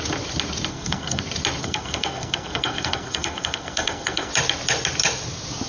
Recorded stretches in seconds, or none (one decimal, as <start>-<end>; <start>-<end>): 0.0-0.7; 1.2-1.6; 4.3-5.7